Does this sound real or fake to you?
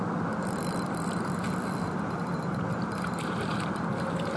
real